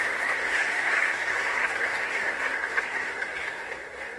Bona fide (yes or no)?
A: no